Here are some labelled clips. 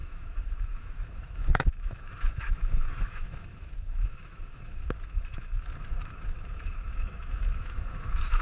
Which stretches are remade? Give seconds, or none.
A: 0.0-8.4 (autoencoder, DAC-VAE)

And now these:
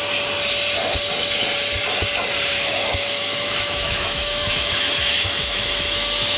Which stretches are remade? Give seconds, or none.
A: 2.5-6.4 (autoencoder, DAC-VAE)

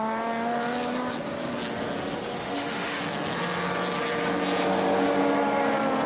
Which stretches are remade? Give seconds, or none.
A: 2.4-3.0 (autoencoder, DAC-VAE)

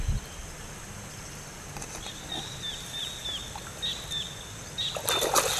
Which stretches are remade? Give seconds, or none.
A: none

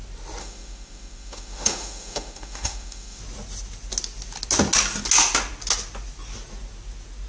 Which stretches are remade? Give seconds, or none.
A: 0.4-3.2 (autoencoder, DAC-VAE)

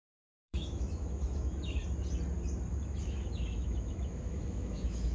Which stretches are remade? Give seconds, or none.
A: 0.0-1.8 (autoencoder, DAC-VAE); 2.7-5.1

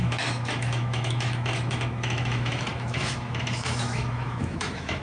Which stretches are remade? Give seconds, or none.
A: 0.0-5.0 (autoencoder, DAC-VAE)

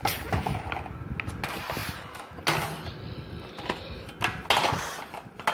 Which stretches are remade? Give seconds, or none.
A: none